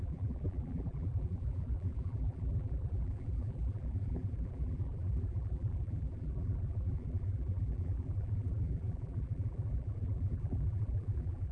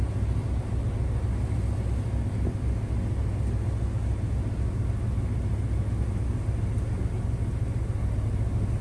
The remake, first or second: first